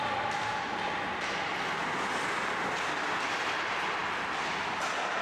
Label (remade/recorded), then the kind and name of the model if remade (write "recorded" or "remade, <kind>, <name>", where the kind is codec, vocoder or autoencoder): recorded